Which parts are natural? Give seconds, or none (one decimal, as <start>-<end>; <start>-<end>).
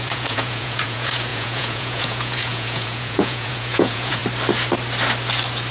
4.2-5.7